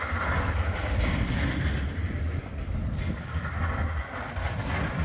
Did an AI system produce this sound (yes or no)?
no